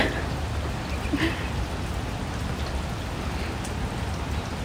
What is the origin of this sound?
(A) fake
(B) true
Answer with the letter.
B